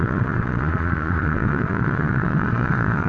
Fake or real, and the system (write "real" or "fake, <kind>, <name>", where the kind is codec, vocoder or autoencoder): fake, vocoder, Vocos